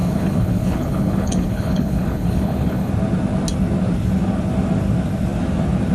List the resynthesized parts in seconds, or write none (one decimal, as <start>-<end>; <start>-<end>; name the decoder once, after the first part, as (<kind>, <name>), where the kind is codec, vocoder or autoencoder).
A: 0.0-2.9 (codec, HILCodec)